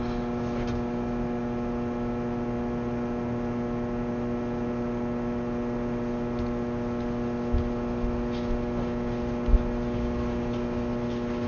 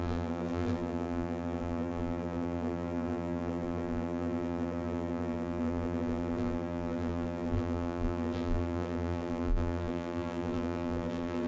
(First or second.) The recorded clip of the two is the first